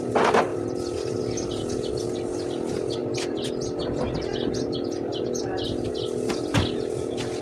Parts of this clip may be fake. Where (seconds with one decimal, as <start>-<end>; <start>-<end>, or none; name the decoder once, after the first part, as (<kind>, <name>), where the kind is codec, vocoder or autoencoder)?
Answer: 0.5-1.7 (vocoder, BigVGAN v2)